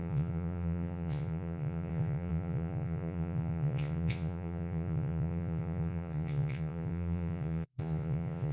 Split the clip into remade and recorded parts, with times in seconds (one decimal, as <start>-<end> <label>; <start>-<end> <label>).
0.0-8.5 remade